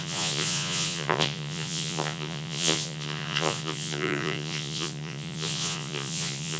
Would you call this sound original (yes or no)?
no